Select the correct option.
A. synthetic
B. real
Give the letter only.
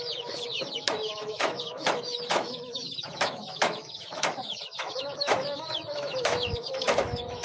A